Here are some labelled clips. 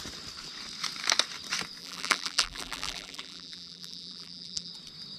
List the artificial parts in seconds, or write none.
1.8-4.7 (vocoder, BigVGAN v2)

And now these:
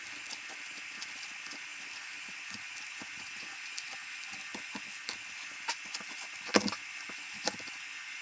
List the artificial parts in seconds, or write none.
none

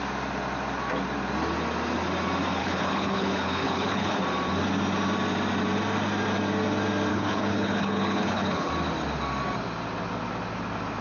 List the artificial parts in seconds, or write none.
2.6-4.2 (codec, HILCodec); 7.1-8.7

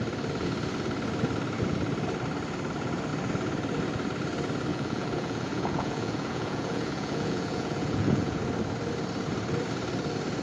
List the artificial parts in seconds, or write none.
4.7-8.4 (vocoder, Vocos)

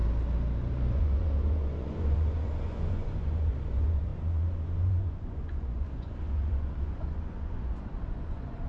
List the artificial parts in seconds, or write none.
0.9-8.7 (vocoder, Vocos)

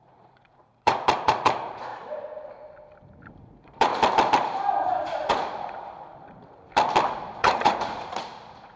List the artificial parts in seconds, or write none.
0.0-1.9 (vocoder, Vocos); 3.3-3.9; 5.3-6.4; 7.1-8.8

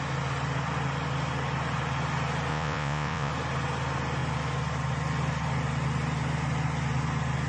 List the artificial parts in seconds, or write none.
2.5-3.3 (vocoder, Vocos)